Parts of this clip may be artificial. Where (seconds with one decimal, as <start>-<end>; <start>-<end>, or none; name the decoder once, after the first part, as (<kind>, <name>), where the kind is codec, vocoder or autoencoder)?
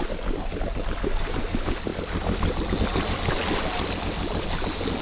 none